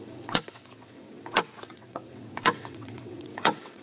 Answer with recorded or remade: remade